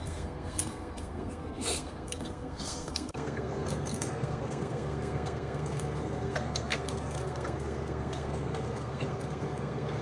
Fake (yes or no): yes